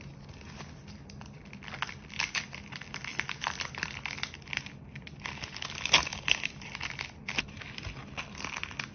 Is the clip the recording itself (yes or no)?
yes